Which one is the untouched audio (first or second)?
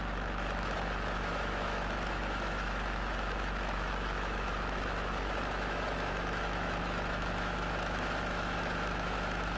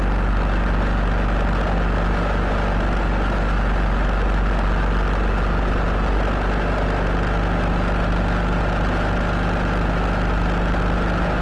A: second